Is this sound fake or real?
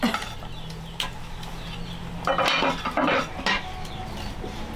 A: real